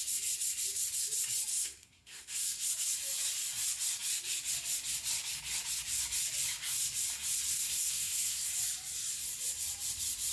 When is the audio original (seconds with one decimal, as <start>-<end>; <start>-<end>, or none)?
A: 0.0-1.5; 2.7-7.5; 8.5-10.3